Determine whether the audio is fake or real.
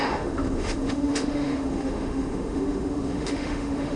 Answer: fake